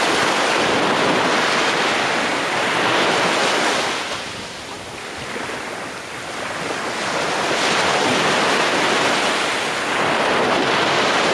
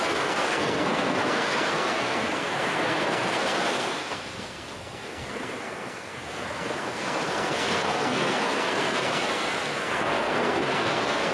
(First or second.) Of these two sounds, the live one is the first